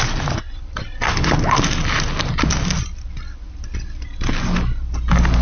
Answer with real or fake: real